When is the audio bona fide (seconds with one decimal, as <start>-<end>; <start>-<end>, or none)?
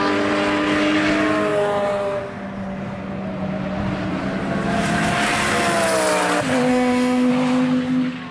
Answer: 0.0-6.7; 7.3-8.3